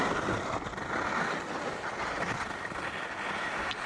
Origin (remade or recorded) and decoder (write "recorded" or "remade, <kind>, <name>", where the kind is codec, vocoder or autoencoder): recorded